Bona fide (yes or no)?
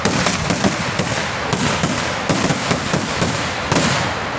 yes